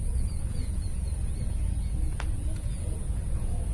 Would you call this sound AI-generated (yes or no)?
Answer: yes